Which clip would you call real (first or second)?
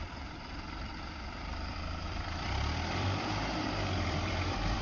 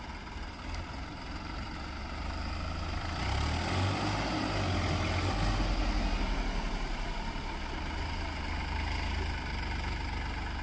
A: second